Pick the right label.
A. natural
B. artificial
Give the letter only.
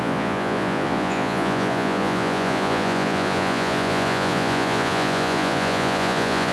B